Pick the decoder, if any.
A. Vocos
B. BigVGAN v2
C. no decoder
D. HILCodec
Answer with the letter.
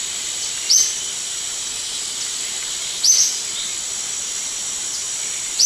C